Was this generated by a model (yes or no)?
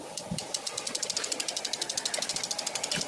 no